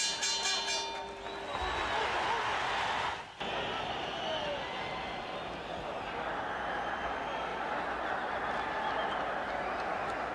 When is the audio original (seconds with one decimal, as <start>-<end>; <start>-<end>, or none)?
0.0-10.3